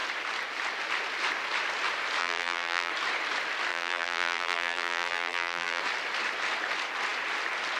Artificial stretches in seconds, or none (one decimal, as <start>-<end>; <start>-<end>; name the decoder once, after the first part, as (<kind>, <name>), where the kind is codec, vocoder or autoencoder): 2.2-2.9 (vocoder, BigVGAN v2); 3.7-5.8